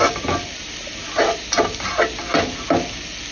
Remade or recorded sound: recorded